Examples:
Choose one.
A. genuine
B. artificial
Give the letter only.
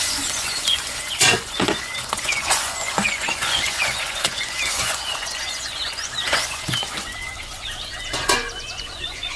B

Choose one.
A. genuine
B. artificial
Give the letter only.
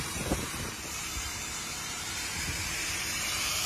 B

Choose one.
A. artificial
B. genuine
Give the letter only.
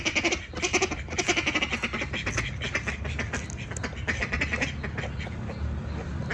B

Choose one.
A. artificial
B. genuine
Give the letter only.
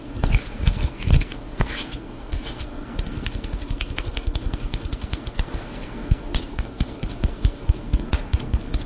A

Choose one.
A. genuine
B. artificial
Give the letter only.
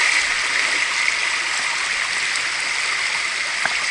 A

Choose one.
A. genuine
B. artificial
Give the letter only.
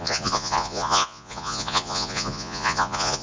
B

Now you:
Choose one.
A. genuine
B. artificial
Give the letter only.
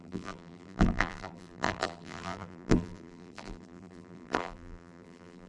B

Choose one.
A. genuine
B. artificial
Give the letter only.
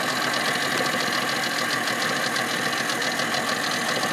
A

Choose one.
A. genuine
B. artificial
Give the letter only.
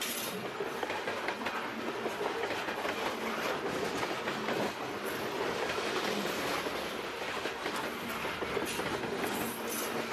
A